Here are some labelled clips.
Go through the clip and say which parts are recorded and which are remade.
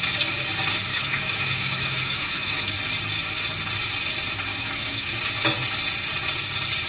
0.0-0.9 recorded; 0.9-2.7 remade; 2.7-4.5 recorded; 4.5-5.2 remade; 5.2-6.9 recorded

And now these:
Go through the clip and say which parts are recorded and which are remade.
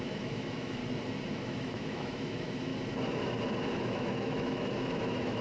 0.0-0.8 remade; 0.8-1.4 recorded; 1.4-2.7 remade; 2.7-3.7 recorded; 3.7-5.4 remade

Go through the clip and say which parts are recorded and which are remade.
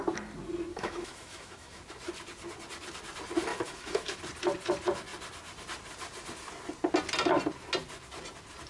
0.0-0.7 recorded; 0.7-1.8 remade; 1.8-3.5 recorded; 3.5-4.2 remade; 4.2-8.7 recorded